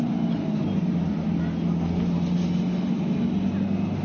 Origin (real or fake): real